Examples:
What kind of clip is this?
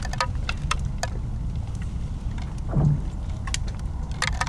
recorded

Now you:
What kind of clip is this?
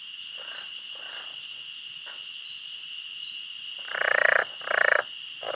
recorded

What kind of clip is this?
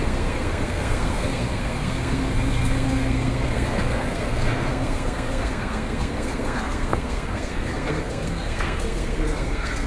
remade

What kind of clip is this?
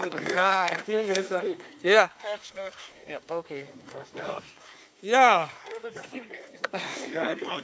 remade